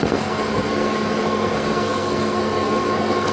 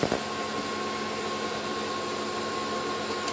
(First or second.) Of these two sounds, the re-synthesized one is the first